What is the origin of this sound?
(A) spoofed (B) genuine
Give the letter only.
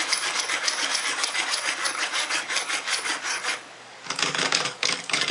A